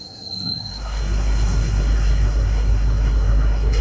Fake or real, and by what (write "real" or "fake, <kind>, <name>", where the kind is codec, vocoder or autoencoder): fake, codec, SNAC